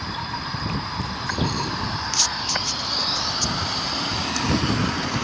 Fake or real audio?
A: fake